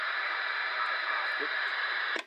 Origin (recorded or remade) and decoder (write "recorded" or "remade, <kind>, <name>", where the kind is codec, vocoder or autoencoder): remade, vocoder, BigVGAN v2